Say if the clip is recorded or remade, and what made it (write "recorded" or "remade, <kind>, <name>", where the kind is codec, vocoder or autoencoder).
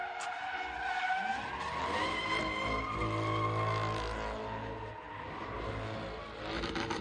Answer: recorded